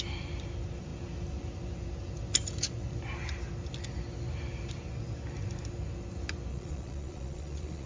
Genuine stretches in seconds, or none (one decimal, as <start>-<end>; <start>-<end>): 0.0-6.5

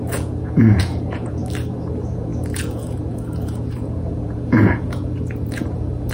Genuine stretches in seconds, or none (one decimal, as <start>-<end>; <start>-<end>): 1.4-1.9

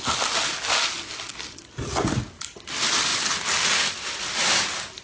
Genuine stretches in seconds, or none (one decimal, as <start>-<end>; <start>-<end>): 0.0-5.0

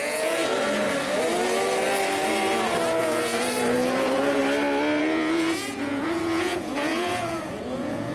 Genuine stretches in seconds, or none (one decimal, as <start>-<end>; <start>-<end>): 0.4-3.0; 4.4-5.0

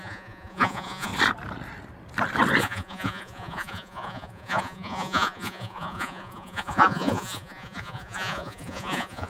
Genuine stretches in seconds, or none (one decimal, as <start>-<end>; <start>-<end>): 1.1-2.6